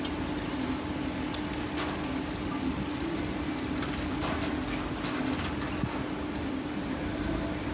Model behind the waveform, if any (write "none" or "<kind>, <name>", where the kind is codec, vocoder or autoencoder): none